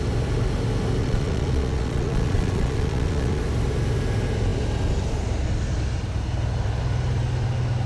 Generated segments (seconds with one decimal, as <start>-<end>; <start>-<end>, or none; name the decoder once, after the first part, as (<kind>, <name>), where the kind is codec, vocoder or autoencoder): 1.0-3.4 (vocoder, Vocos)